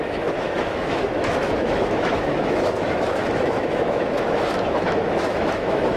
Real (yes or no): no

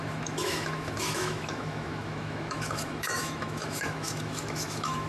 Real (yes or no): no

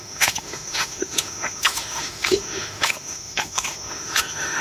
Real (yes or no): no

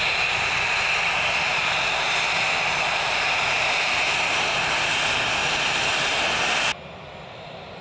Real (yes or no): yes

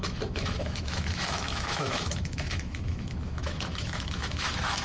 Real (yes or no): no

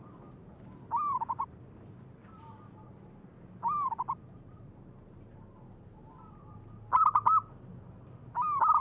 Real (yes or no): yes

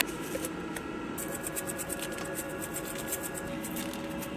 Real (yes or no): yes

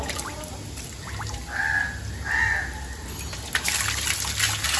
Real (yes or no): yes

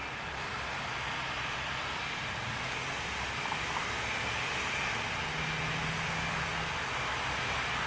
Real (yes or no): yes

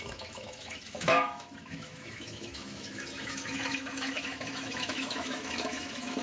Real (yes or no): no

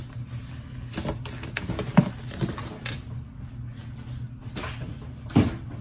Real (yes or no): yes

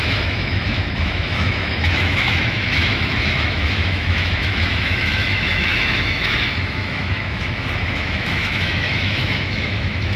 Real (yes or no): no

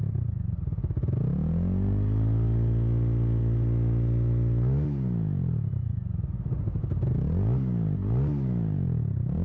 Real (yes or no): yes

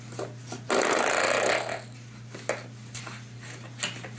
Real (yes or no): yes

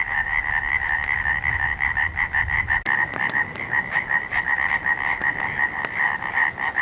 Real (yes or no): yes